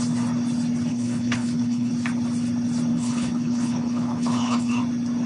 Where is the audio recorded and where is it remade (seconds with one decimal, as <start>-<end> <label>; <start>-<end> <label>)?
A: 0.0-0.9 recorded; 0.9-1.9 remade; 1.9-2.9 recorded; 2.9-4.8 remade; 4.8-5.3 recorded